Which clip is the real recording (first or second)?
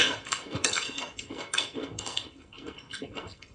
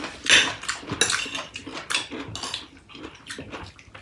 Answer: second